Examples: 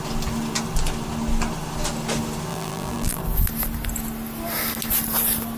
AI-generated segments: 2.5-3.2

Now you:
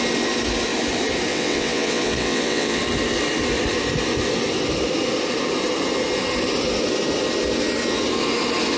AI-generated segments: 1.3-2.8

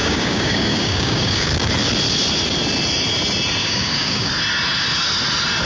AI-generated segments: 0.0-1.7; 3.6-4.3

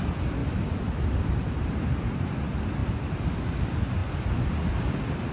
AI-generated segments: none

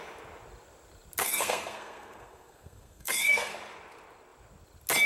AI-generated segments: 1.2-3.5